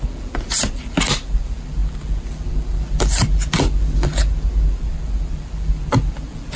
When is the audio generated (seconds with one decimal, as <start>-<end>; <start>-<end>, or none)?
none